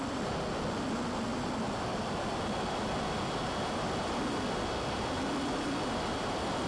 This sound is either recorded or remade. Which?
recorded